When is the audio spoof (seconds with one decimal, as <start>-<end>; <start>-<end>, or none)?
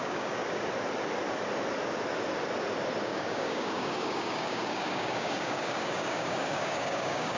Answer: 0.0-0.4; 3.0-7.4